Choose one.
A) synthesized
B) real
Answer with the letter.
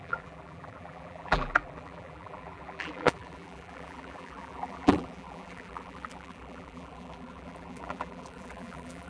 A